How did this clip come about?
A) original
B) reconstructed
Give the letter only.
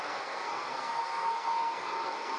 B